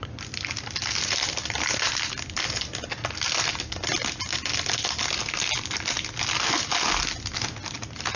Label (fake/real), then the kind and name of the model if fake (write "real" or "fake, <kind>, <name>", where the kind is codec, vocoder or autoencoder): real